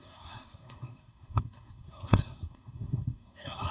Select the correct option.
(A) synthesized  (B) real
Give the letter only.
A